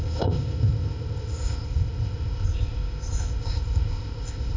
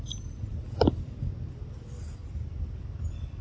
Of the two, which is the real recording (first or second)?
second